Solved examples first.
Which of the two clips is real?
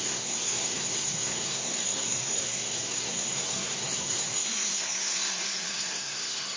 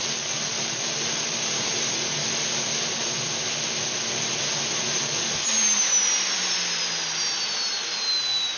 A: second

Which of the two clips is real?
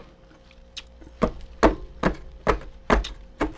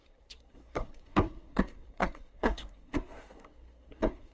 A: first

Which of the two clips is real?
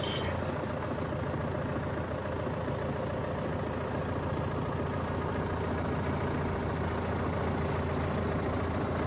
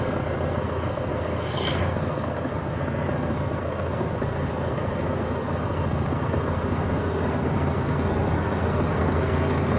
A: first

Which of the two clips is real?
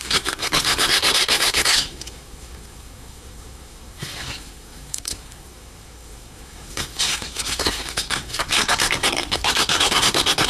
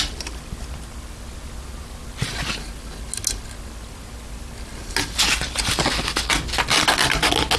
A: second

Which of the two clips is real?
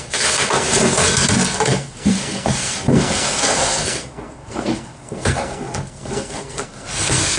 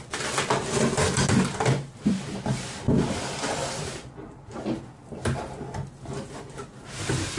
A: second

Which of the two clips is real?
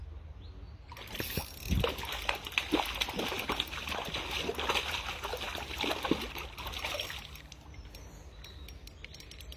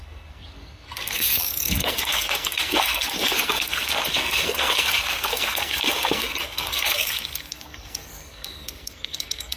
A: first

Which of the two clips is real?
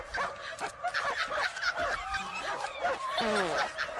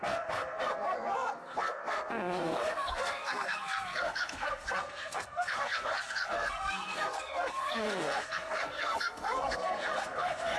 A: first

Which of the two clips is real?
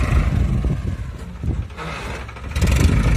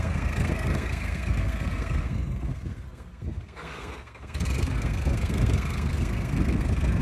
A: first